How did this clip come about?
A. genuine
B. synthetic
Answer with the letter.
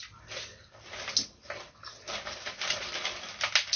A